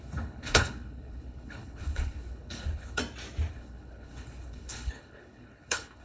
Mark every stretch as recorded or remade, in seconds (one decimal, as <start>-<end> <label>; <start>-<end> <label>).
0.0-3.0 remade; 3.0-3.5 recorded; 3.5-6.0 remade